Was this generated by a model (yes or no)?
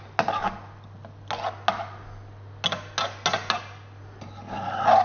no